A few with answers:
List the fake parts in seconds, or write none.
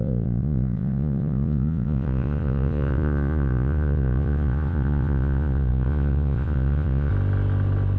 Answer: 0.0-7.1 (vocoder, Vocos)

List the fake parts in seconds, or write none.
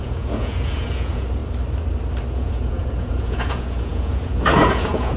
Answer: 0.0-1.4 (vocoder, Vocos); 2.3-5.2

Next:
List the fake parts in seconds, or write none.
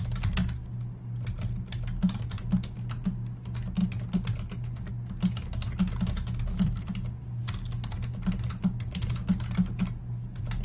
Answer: none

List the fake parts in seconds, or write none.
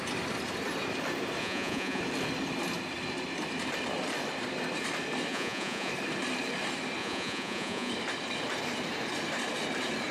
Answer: 1.4-2.0 (vocoder, Vocos); 5.3-5.9; 7.0-7.9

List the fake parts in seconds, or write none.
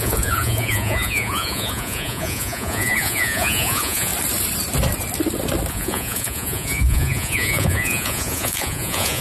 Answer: 0.0-4.1 (vocoder, Vocos); 5.7-9.2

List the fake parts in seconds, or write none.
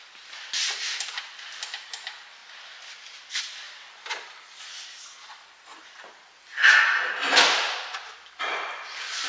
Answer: none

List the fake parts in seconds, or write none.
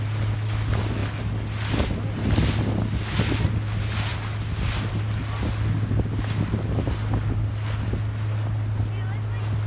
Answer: none